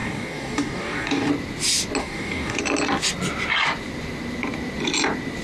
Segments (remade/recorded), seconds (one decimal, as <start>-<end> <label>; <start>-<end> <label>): 0.0-1.3 remade; 1.3-2.0 recorded; 2.0-2.6 remade; 2.6-5.4 recorded